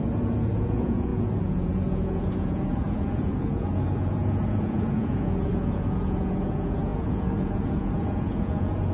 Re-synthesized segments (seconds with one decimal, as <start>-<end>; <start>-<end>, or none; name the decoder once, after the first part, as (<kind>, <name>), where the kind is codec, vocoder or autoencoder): 0.0-8.9 (vocoder, Vocos)